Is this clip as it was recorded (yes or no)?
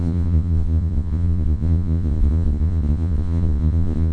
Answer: no